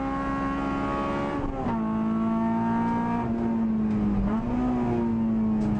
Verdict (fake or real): real